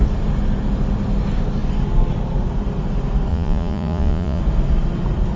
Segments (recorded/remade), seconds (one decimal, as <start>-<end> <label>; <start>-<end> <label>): 0.0-3.3 recorded; 3.3-4.4 remade; 4.4-5.4 recorded